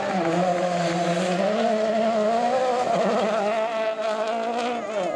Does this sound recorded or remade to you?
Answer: recorded